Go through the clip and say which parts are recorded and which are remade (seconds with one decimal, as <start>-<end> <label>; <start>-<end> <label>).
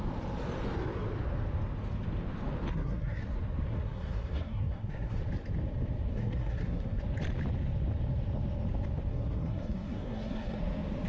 0.0-2.7 recorded; 2.7-3.2 remade; 3.2-3.7 recorded; 3.7-5.2 remade; 5.2-6.1 recorded; 6.1-7.0 remade; 7.0-9.1 recorded; 9.1-10.6 remade; 10.6-11.1 recorded